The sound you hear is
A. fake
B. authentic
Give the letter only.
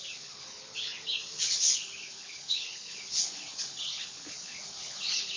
A